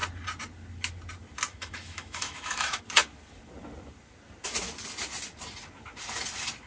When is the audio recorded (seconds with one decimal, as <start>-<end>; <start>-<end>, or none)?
0.0-1.5; 2.8-6.7